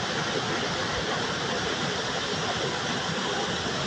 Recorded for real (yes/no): yes